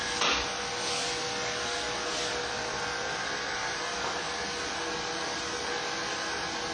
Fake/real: real